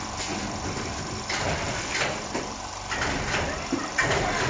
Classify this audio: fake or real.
real